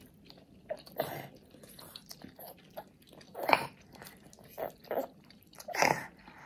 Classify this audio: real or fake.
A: real